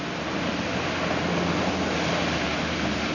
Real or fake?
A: real